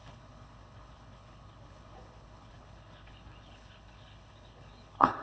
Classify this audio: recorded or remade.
remade